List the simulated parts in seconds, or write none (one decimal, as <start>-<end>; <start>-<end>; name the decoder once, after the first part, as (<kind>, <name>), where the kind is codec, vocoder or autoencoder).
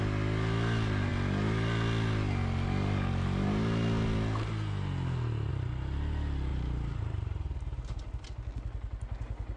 6.5-8.0 (vocoder, BigVGAN v2)